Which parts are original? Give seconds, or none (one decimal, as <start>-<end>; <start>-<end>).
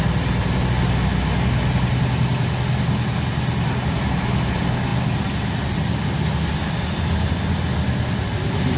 0.0-8.8